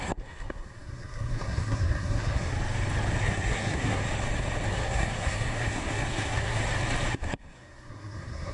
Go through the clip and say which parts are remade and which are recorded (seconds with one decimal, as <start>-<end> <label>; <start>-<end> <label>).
0.0-2.5 remade; 2.5-3.2 recorded; 3.2-4.0 remade; 4.0-4.7 recorded; 4.7-6.6 remade; 6.6-7.1 recorded; 7.1-8.5 remade